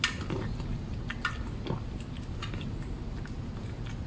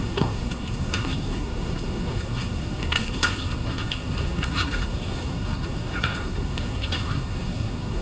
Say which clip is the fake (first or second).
second